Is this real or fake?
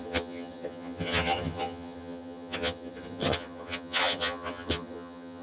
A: fake